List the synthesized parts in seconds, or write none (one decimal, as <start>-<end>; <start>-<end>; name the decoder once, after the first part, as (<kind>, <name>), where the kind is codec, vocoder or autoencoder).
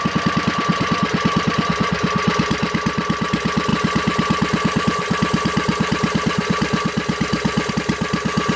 0.7-1.7 (vocoder, BigVGAN v2)